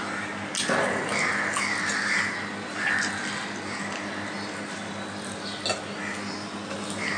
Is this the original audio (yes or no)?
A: yes